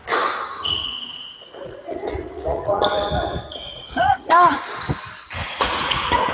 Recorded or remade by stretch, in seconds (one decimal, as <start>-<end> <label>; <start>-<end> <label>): 0.0-0.5 recorded; 0.5-2.8 remade; 2.8-3.5 recorded; 3.5-4.6 remade; 4.6-5.4 recorded; 5.4-6.3 remade